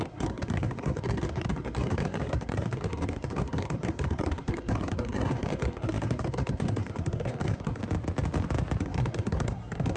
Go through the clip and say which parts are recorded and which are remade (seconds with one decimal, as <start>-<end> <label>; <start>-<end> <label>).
0.0-7.8 remade; 7.8-8.8 recorded; 8.8-10.0 remade